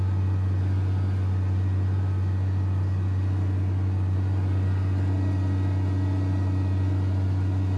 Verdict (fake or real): real